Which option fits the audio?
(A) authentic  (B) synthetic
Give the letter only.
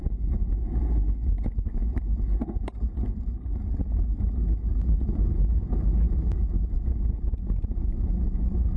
A